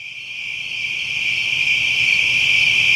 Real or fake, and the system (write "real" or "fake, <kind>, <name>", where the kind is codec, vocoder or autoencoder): real